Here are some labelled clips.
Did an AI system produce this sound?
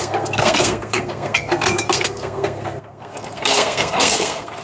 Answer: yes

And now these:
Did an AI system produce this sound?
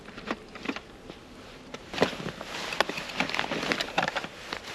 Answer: no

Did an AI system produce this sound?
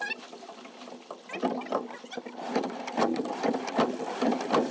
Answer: no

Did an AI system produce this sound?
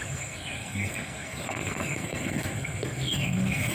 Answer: yes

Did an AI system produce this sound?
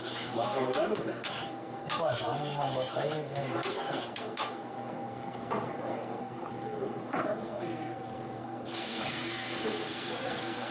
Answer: yes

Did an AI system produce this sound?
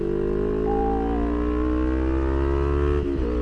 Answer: no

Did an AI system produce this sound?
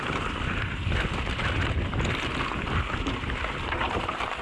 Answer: no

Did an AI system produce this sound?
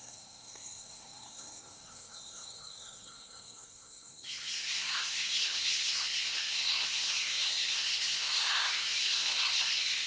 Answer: yes